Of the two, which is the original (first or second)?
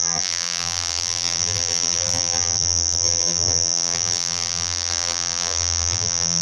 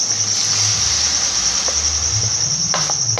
second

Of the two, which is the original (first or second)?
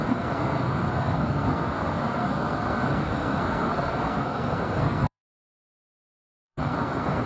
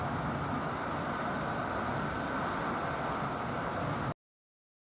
second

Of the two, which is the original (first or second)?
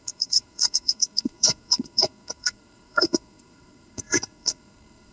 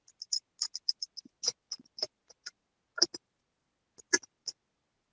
second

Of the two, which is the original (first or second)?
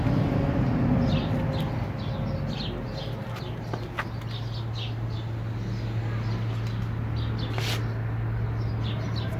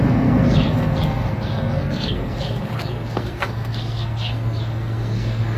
first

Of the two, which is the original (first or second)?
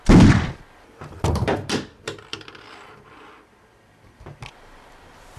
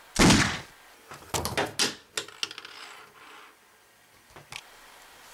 second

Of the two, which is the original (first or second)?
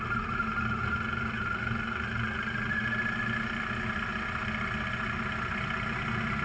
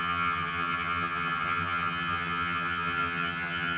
first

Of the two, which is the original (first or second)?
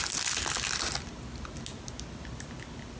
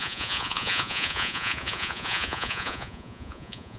first